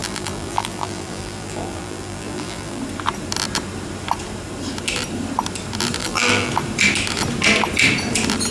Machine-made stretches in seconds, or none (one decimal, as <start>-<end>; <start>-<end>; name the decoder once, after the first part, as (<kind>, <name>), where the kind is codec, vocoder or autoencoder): 0.0-2.8 (vocoder, BigVGAN v2); 6.0-6.5